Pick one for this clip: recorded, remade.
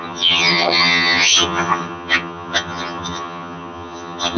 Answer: remade